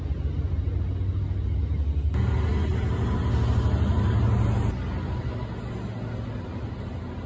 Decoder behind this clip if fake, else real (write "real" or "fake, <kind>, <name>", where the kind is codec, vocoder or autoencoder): real